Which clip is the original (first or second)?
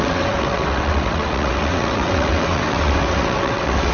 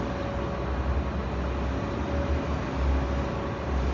second